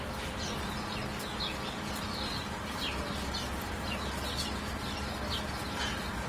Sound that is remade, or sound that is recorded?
recorded